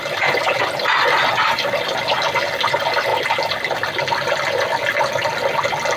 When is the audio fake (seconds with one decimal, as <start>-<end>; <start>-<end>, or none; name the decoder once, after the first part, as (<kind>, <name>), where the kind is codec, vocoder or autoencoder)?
none